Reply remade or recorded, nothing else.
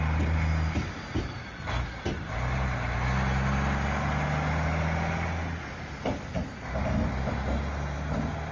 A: recorded